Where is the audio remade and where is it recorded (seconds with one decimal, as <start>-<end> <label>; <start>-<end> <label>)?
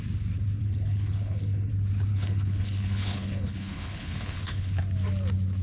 0.0-0.6 recorded; 0.6-1.7 remade; 1.7-2.1 recorded; 2.1-4.8 remade; 4.8-5.6 recorded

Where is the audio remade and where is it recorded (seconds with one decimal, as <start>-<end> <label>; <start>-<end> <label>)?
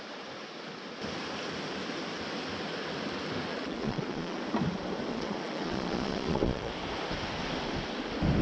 0.0-3.5 recorded; 3.5-4.4 remade; 4.4-5.1 recorded; 5.1-6.7 remade; 6.7-8.4 recorded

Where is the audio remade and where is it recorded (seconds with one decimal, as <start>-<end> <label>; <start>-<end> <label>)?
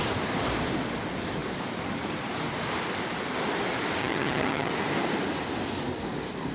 0.0-4.0 recorded; 4.0-4.7 remade; 4.7-6.5 recorded